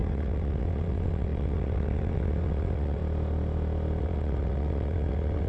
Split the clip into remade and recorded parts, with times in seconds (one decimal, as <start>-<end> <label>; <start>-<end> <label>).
0.0-3.0 remade; 3.0-4.0 recorded; 4.0-5.5 remade